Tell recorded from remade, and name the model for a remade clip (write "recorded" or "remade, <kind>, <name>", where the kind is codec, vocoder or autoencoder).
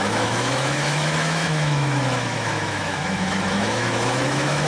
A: remade, autoencoder, DAC-VAE